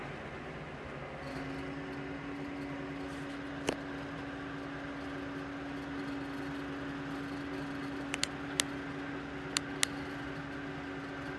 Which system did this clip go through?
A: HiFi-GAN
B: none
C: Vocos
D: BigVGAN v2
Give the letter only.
B